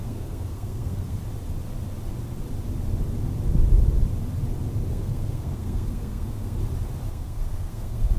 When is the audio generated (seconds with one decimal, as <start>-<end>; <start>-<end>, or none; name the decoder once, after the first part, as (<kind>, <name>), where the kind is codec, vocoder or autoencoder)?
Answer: 0.0-1.2 (codec, SNAC); 4.9-6.6; 7.1-8.2